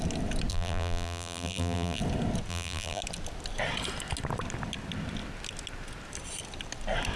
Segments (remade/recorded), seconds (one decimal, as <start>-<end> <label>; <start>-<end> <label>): 0.0-0.5 recorded; 0.5-2.0 remade; 2.0-2.5 recorded; 2.5-3.0 remade; 3.0-7.2 recorded